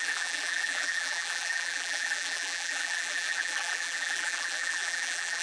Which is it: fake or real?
fake